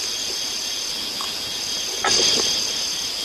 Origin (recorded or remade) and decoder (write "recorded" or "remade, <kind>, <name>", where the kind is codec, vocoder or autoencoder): recorded